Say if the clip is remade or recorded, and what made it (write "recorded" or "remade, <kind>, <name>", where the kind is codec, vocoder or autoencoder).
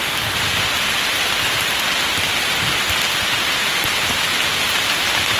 recorded